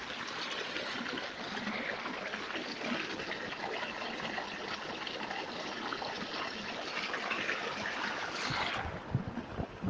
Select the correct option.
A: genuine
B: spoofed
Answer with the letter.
A